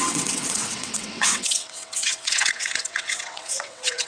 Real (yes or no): no